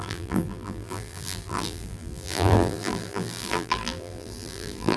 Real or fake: fake